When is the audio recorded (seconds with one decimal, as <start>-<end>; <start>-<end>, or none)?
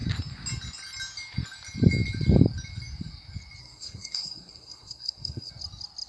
0.0-3.6; 5.5-6.1